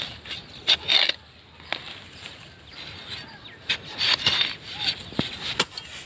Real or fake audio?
real